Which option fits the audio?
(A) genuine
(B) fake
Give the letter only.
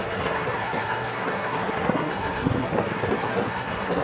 B